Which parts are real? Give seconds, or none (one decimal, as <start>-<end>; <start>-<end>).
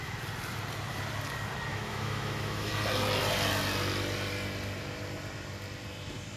0.0-1.7; 2.7-6.4